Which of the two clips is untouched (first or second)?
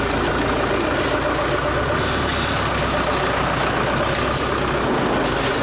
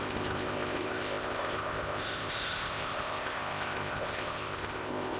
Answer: first